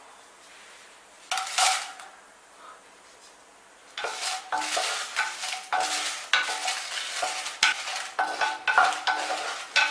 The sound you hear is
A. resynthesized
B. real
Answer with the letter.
B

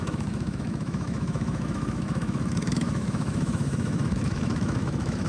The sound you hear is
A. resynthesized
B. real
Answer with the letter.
A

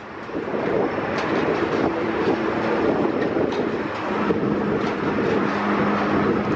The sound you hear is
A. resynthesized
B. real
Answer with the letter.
B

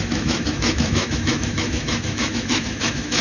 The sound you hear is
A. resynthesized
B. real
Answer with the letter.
A